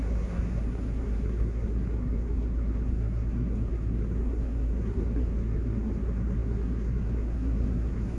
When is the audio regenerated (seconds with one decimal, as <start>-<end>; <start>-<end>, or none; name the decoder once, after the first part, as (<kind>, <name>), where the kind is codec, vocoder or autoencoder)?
0.0-8.2 (codec, SNAC)